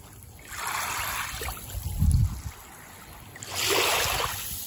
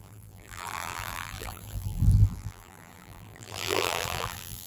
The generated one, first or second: second